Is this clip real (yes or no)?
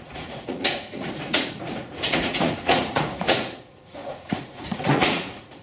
no